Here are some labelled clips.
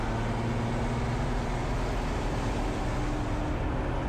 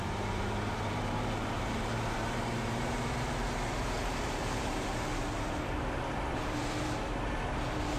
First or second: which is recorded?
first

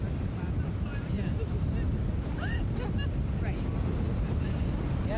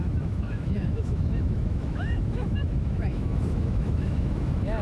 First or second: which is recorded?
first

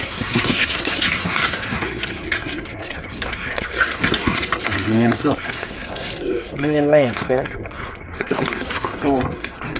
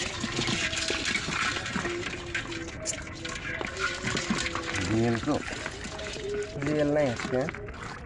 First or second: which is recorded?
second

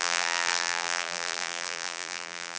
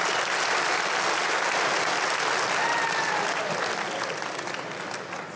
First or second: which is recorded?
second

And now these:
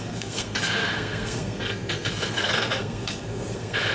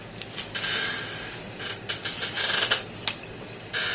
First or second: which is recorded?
second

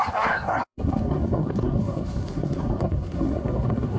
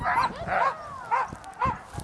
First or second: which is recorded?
second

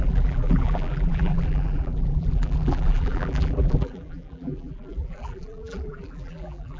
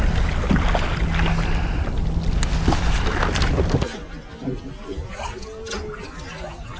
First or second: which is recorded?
second